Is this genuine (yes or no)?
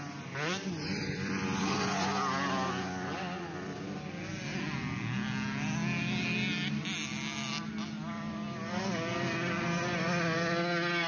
yes